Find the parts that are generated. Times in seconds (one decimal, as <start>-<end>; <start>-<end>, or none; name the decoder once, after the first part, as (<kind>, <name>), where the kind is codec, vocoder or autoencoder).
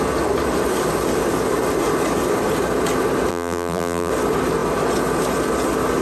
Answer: 3.3-4.1 (vocoder, BigVGAN v2)